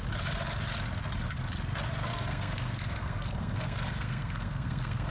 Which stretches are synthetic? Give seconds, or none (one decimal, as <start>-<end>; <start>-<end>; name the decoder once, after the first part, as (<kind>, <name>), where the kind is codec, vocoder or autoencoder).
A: 2.1-5.1 (codec, SNAC)